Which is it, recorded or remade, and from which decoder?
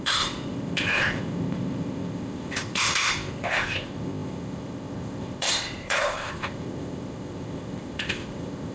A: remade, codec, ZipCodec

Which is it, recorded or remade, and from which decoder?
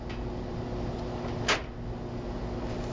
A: recorded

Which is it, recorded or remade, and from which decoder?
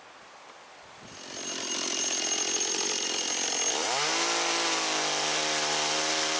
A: recorded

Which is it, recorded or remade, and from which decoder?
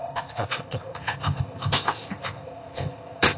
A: remade, codec, ZipCodec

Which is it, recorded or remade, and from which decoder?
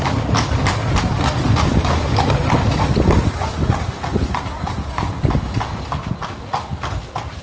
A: recorded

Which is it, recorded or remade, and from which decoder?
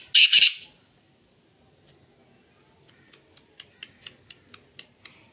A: recorded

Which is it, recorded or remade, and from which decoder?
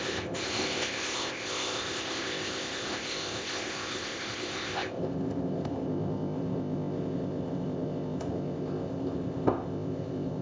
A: remade, codec, ZipCodec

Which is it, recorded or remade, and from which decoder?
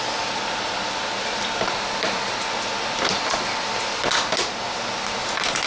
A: recorded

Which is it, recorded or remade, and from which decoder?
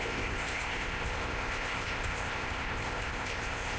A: remade, codec, ZipCodec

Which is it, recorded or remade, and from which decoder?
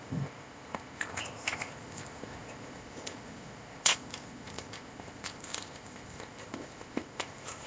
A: remade, codec, ZipCodec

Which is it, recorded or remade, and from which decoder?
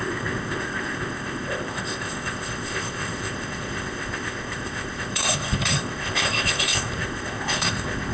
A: remade, codec, ZipCodec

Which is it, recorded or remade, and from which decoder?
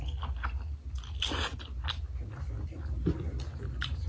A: recorded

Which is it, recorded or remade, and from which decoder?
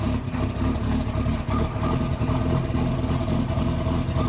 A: recorded